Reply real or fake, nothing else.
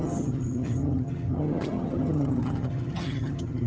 fake